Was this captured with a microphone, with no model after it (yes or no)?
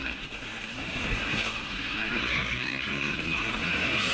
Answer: no